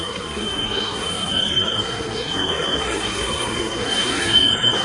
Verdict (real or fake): fake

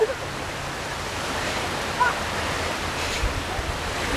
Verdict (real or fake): fake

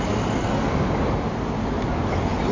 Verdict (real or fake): real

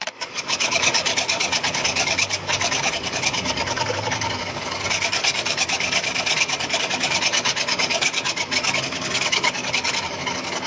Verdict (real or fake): fake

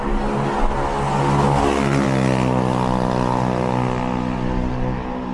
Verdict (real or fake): real